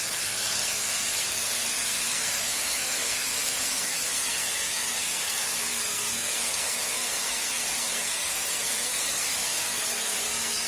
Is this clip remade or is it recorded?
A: remade